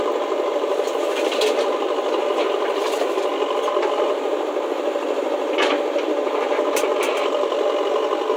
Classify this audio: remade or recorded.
recorded